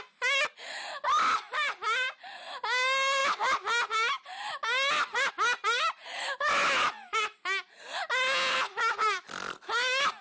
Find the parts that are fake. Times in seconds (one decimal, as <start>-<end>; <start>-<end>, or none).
none